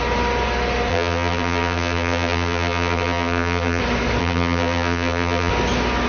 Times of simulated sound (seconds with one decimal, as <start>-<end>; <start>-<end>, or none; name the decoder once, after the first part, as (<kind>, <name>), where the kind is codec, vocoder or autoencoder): 0.9-3.8 (vocoder, BigVGAN v2); 4.2-5.5